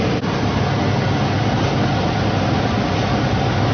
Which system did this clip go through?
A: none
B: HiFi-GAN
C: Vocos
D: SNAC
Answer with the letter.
A